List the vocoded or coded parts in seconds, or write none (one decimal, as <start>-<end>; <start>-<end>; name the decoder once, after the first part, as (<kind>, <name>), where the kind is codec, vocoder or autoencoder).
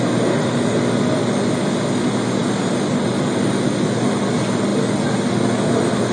none